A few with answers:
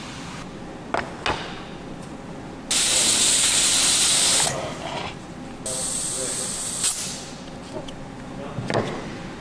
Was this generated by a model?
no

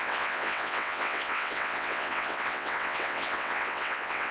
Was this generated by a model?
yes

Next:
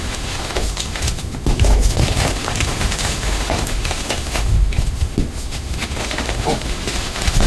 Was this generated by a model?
yes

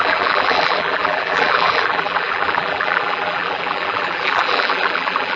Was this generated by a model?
yes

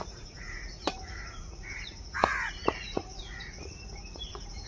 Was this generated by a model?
yes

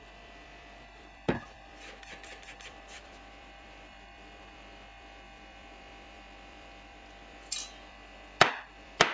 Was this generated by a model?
yes